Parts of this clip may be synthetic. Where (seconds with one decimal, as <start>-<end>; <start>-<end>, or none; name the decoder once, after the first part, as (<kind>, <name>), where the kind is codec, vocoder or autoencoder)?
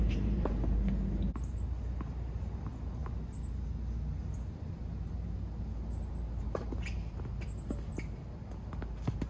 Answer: 0.0-0.5 (vocoder, BigVGAN v2)